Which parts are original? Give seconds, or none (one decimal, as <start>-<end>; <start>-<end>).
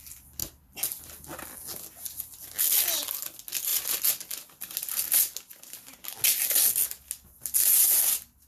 0.0-8.5